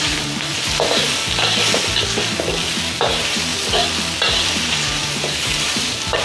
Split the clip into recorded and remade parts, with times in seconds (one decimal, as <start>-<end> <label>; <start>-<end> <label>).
0.0-0.5 remade; 0.5-3.0 recorded; 3.0-3.5 remade; 3.5-4.5 recorded; 4.5-6.2 remade